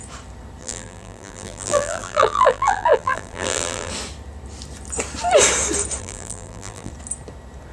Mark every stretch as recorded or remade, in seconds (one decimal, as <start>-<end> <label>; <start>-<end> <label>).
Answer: 0.0-0.6 recorded; 0.6-3.9 remade; 3.9-6.0 recorded; 6.0-6.9 remade; 6.9-7.7 recorded